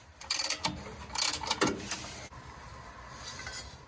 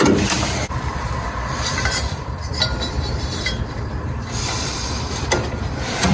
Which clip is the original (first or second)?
first